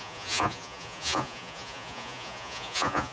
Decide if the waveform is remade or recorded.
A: remade